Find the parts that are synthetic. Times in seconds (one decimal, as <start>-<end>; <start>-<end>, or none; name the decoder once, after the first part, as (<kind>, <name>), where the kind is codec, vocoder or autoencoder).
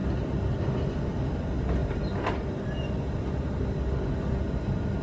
0.0-0.8 (vocoder, BigVGAN v2); 1.8-5.0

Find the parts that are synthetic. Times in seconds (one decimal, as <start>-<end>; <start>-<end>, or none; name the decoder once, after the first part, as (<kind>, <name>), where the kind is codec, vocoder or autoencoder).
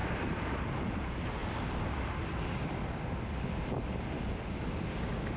0.0-0.6 (vocoder, BigVGAN v2); 1.4-4.6